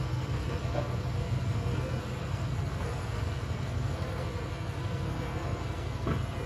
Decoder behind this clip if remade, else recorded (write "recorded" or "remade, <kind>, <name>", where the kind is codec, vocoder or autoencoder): remade, codec, SNAC